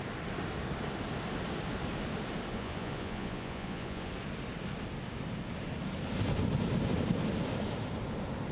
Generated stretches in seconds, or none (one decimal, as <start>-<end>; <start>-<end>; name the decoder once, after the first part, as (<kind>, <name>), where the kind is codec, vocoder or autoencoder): 2.5-4.1 (vocoder, Vocos)